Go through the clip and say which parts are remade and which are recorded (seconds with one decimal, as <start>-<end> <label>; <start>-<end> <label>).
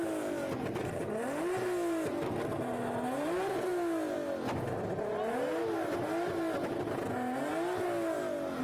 0.0-8.6 recorded